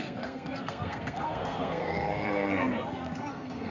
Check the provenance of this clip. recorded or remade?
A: remade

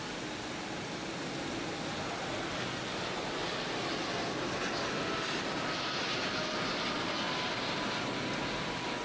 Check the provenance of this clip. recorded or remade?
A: recorded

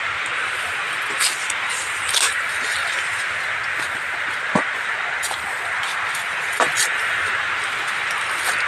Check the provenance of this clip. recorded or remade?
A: recorded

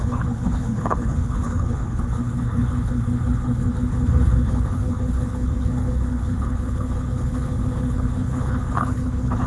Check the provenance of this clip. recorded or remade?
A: remade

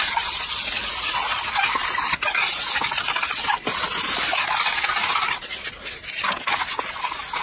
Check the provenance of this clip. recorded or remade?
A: recorded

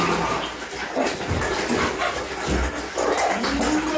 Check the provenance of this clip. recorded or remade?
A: recorded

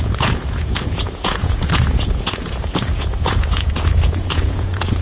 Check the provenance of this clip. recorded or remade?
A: remade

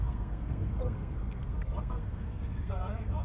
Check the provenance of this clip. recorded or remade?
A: remade